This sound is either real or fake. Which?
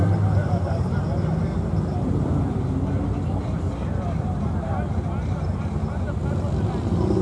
real